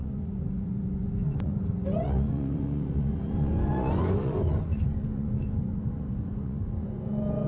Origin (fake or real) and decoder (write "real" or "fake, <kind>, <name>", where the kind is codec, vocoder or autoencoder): fake, vocoder, Vocos